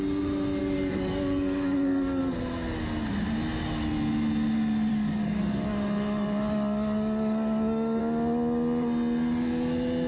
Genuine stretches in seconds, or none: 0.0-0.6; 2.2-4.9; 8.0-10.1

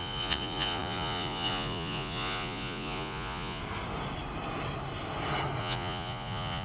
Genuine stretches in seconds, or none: 3.6-5.6

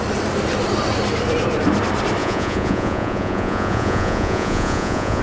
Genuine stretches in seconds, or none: 0.0-2.2